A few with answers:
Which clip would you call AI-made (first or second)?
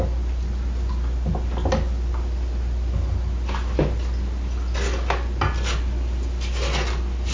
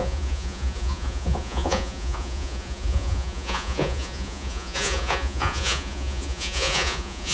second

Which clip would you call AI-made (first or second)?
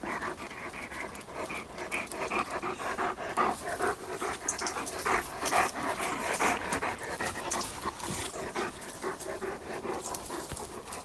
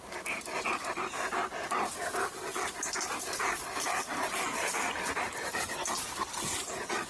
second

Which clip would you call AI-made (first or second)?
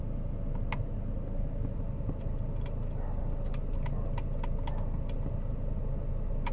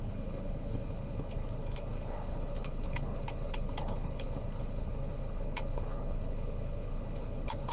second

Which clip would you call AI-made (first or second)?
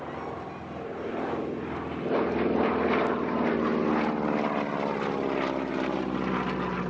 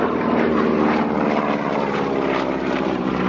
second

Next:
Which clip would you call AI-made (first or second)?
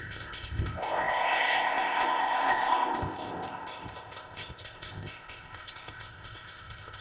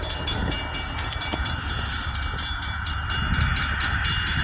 first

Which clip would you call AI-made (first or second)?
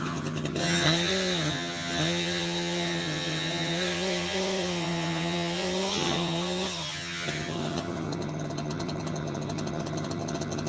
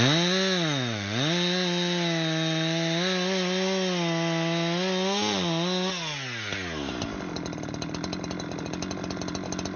first